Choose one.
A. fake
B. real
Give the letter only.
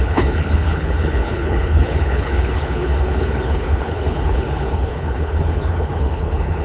A